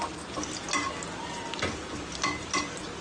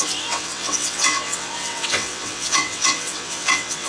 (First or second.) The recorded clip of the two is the first